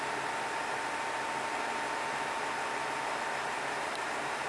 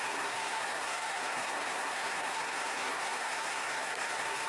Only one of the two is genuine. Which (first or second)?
first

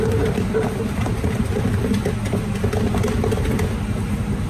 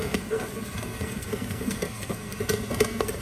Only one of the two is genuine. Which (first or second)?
first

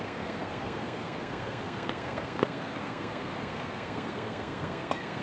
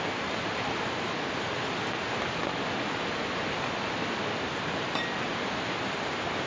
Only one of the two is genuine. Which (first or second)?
second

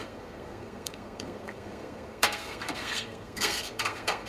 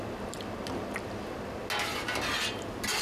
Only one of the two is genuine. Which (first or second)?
second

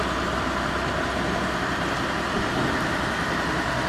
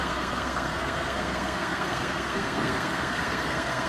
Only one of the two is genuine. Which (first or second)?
first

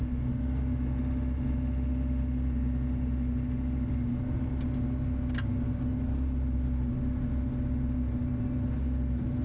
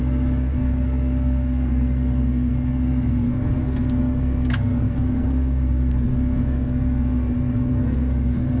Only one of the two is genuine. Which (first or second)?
first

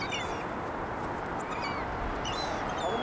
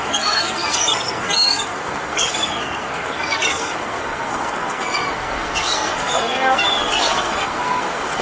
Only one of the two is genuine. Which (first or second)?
first